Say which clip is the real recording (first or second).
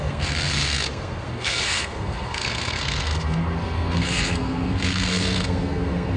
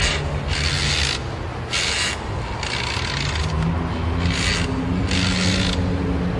second